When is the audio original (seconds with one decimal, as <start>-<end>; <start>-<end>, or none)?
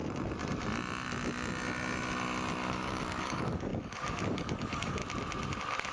0.0-2.7; 5.0-5.9